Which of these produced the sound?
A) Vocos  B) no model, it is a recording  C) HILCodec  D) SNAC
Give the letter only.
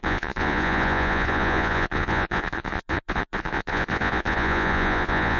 A